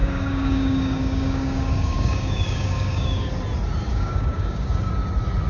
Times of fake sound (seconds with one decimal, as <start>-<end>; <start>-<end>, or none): 0.0-3.3; 3.9-4.9